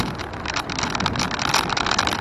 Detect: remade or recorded remade